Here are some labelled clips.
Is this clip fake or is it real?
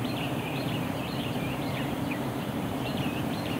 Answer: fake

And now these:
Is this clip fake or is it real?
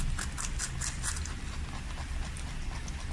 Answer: real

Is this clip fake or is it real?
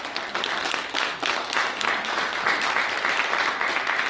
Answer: real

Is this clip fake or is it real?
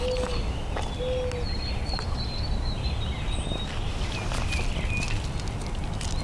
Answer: real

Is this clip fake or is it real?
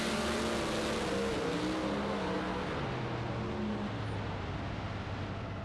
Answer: real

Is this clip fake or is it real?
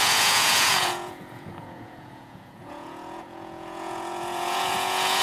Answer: fake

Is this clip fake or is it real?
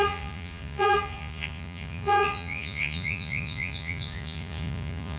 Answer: fake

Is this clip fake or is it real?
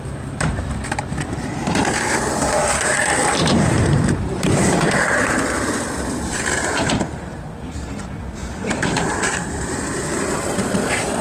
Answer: fake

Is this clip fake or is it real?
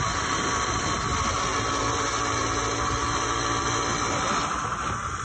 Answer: real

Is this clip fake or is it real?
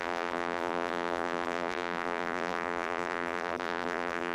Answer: fake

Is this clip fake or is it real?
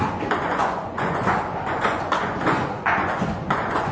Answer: fake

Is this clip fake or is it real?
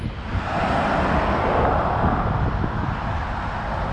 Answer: real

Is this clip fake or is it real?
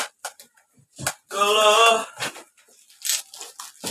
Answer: real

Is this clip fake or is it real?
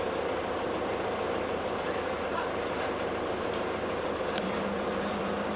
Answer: real